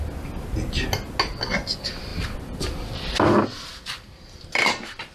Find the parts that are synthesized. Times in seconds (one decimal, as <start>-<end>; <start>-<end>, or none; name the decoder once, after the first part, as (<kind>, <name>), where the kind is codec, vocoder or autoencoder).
none